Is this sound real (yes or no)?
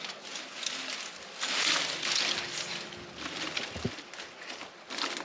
yes